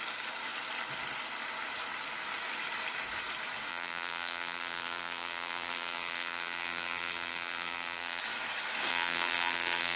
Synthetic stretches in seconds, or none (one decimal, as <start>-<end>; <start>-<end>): 3.7-8.2; 8.9-10.0